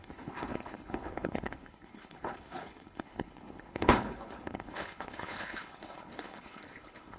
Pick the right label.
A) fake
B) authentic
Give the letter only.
A